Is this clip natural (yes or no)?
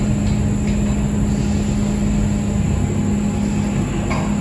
yes